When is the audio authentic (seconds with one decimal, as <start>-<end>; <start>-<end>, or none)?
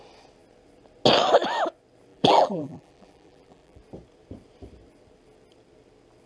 0.0-2.1; 3.8-6.3